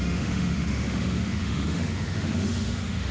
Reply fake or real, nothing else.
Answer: fake